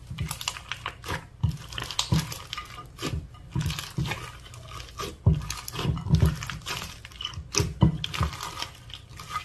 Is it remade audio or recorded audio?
recorded